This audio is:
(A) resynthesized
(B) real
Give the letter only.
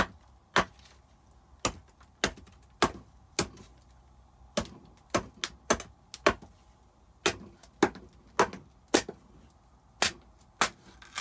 B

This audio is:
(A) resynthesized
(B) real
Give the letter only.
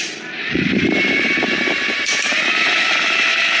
A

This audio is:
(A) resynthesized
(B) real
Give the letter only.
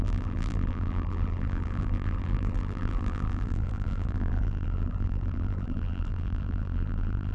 A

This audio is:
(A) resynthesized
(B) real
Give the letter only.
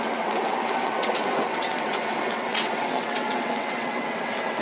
A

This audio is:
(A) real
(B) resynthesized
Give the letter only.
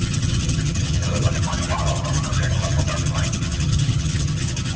B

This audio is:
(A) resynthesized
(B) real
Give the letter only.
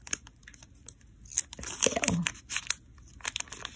B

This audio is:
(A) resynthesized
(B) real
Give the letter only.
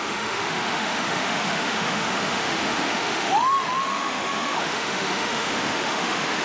A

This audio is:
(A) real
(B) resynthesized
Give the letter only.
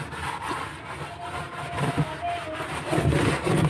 A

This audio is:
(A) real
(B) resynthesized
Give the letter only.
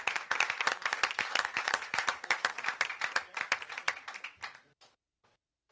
B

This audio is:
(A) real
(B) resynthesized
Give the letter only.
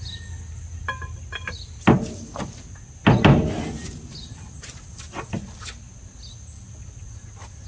A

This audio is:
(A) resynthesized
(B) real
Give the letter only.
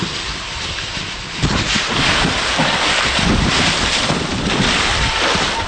A